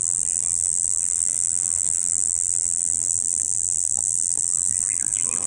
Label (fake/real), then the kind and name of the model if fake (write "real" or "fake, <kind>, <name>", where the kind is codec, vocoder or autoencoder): fake, vocoder, BigVGAN v2